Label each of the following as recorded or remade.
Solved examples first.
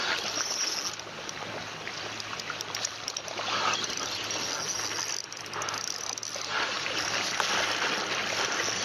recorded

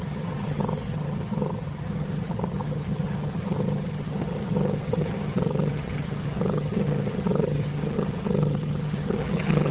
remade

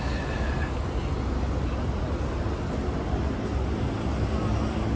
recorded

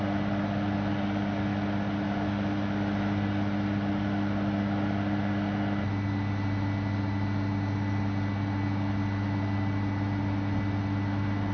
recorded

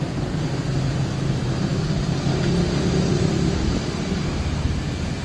recorded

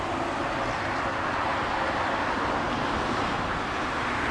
recorded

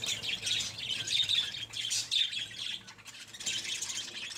recorded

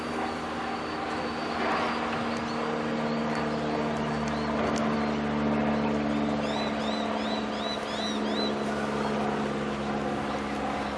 recorded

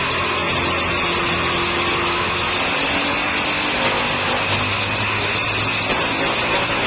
recorded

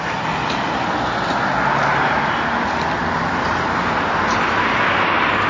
recorded